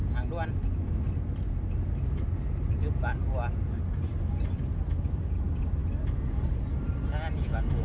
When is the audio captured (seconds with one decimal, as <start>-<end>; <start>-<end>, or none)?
0.0-7.8